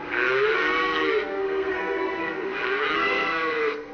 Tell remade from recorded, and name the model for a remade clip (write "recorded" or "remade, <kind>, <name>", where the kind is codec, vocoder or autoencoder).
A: remade, codec, SNAC